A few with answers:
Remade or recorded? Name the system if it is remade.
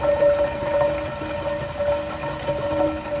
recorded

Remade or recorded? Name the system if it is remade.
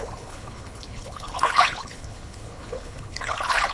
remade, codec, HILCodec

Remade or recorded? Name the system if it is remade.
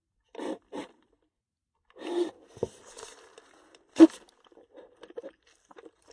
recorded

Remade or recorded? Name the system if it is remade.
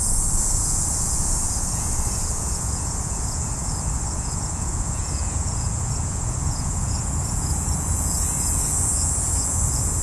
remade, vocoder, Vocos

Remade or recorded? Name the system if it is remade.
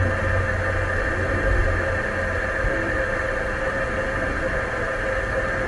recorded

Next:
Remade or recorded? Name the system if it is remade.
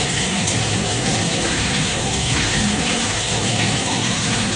remade, codec, SNAC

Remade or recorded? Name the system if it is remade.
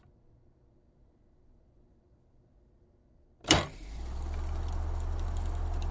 recorded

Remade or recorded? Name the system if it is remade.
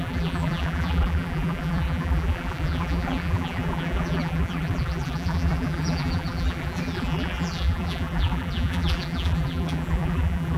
remade, vocoder, BigVGAN v2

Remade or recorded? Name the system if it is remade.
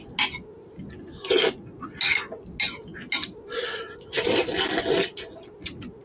recorded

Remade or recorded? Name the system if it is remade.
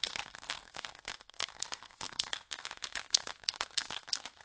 remade, codec, SNAC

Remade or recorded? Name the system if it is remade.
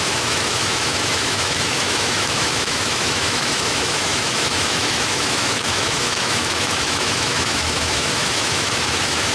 remade, autoencoder, DAC-VAE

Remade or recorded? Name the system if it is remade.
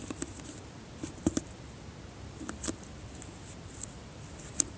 recorded